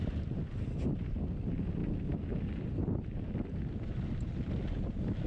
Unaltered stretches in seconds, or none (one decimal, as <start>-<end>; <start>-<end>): 0.0-5.3